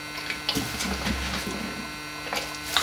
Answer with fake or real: real